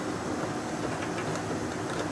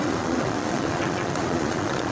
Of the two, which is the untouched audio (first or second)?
first